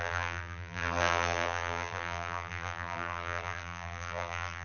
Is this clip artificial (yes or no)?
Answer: yes